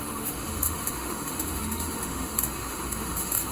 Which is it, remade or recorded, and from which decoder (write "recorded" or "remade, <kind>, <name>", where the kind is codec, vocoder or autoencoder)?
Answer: remade, autoencoder, DAC-VAE